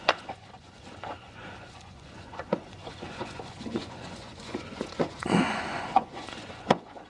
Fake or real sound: fake